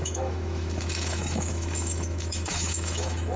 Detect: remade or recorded remade